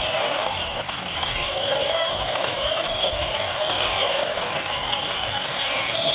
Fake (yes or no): yes